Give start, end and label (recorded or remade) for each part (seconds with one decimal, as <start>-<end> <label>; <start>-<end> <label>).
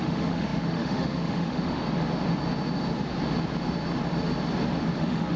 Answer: 0.0-1.8 remade; 1.8-5.0 recorded; 5.0-5.4 remade